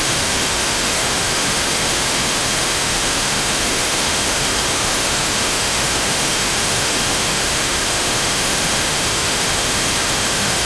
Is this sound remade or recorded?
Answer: remade